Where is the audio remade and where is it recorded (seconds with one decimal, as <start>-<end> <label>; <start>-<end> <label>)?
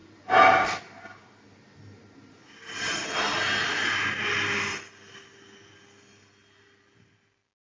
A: 0.0-7.8 recorded